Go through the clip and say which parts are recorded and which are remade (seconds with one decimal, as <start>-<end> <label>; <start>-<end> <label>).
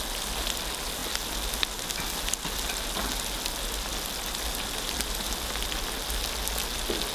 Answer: 0.0-7.1 recorded